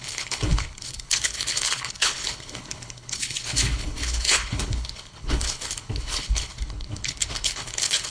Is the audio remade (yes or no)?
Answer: yes